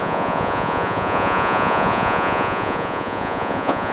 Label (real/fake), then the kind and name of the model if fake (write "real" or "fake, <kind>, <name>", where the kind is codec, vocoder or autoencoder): fake, vocoder, Vocos